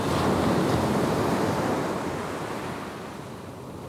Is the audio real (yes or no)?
yes